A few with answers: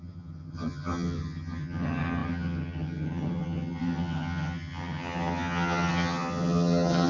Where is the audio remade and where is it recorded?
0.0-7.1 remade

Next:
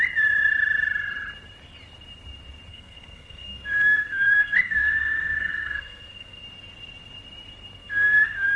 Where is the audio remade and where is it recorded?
0.0-2.7 recorded; 2.7-6.4 remade; 6.4-7.8 recorded; 7.8-8.6 remade

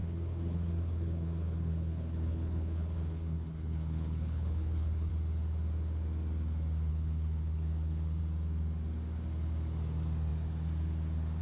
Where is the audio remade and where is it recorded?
0.0-5.1 remade; 5.1-6.9 recorded; 6.9-8.2 remade; 8.2-11.4 recorded